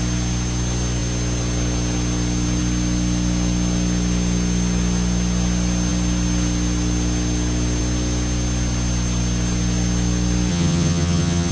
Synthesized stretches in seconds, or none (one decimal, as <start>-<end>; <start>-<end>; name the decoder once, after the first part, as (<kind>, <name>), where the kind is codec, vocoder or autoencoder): 10.5-11.5 (vocoder, HiFi-GAN)